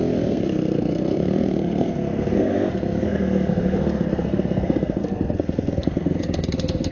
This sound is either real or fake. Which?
fake